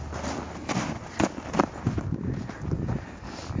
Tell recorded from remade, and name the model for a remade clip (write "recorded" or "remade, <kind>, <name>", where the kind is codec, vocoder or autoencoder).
recorded